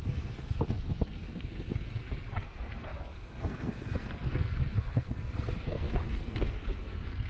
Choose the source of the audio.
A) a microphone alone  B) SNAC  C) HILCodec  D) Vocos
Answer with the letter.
B